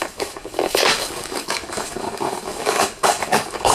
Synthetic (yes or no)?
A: yes